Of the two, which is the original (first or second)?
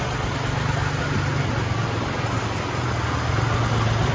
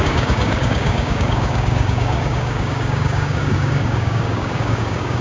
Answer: first